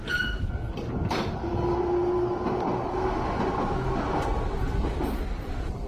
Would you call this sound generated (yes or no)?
no